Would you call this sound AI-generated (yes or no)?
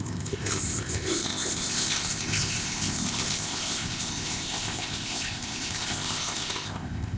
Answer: yes